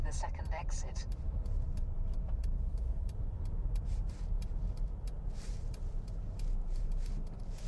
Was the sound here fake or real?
fake